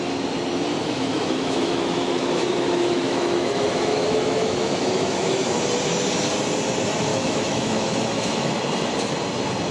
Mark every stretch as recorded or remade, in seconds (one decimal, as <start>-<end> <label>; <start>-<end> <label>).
0.0-0.8 recorded; 0.8-5.6 remade; 5.6-7.1 recorded; 7.1-8.5 remade; 8.5-9.7 recorded